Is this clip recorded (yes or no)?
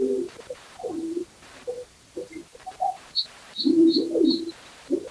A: no